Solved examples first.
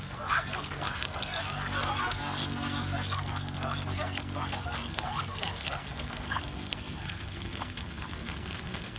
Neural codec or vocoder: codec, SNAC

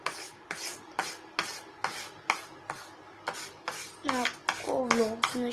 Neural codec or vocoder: none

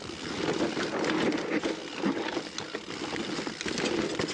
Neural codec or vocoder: none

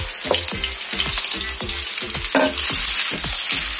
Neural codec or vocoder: none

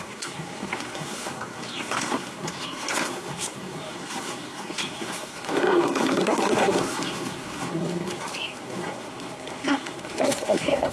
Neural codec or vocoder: codec, SNAC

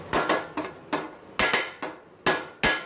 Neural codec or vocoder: none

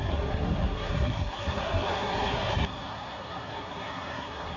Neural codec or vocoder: codec, SNAC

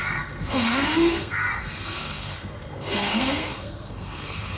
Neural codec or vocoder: codec, SNAC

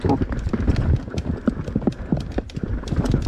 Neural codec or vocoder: none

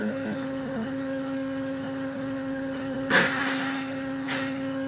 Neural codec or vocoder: codec, SNAC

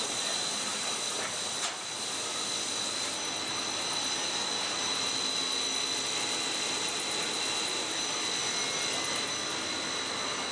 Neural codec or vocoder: none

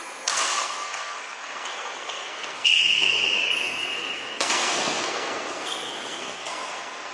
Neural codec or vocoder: codec, SNAC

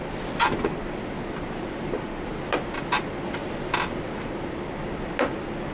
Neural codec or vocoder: none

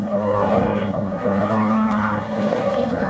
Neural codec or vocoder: codec, SNAC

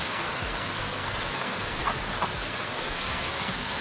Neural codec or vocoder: codec, SNAC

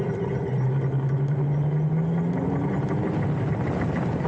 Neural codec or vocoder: none